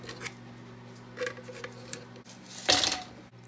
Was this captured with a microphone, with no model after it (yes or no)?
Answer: yes